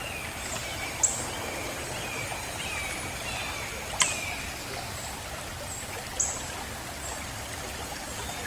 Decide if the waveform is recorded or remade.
recorded